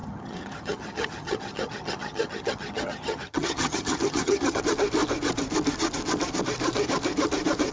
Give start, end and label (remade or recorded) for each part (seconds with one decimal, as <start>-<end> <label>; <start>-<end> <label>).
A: 0.0-4.6 remade; 4.6-7.7 recorded

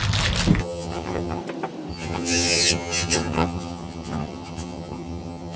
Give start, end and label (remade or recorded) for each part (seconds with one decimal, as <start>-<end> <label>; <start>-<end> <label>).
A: 0.0-0.6 recorded; 0.6-1.4 remade; 1.4-1.9 recorded; 1.9-5.6 remade

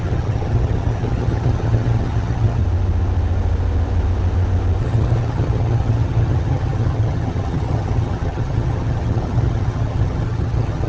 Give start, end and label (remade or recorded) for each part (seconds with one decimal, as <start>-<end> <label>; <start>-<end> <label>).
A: 0.0-2.6 remade; 2.6-4.8 recorded; 4.8-10.9 remade

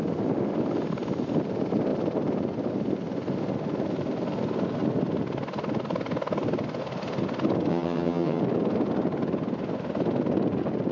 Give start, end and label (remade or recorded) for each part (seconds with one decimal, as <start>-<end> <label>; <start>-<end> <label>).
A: 0.0-7.7 recorded; 7.7-8.4 remade; 8.4-10.9 recorded

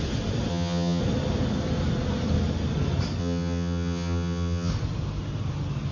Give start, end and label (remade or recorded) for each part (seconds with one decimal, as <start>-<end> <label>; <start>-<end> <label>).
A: 0.0-0.5 recorded; 0.5-1.0 remade; 1.0-3.2 recorded; 3.2-4.7 remade; 4.7-5.9 recorded